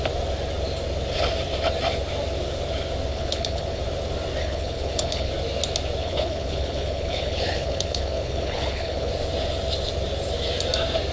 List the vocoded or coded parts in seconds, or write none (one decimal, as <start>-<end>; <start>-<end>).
3.1-3.8; 4.4-5.3; 6.0-9.1